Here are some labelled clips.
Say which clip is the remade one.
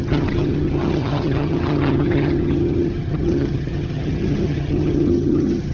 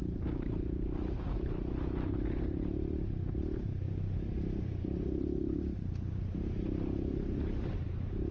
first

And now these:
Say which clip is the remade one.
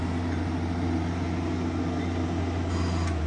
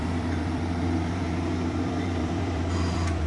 second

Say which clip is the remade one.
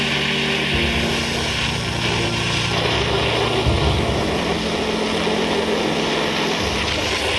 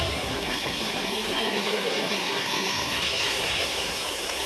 second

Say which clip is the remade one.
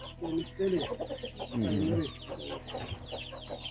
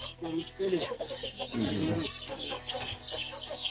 second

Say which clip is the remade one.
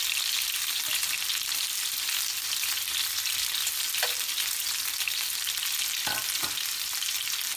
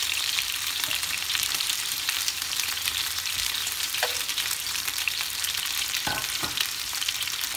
second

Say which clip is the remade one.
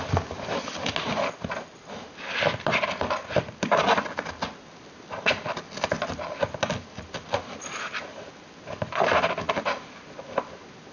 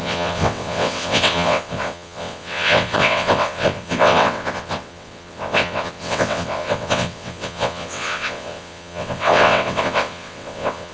second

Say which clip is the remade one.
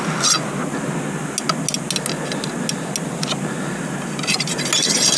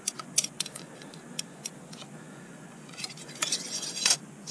second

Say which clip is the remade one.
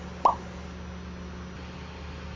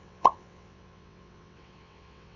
second